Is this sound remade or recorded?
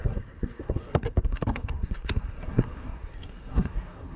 remade